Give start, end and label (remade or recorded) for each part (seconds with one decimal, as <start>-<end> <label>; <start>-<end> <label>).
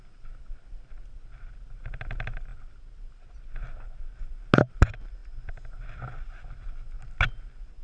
0.0-7.8 recorded